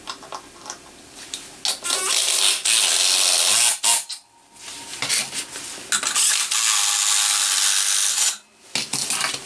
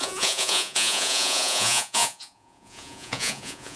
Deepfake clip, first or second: second